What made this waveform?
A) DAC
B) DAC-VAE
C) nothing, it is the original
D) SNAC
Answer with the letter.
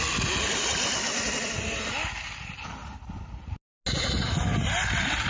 C